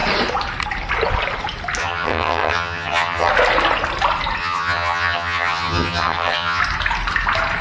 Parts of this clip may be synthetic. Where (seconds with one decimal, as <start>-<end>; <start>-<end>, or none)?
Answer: 1.8-3.3; 4.4-6.6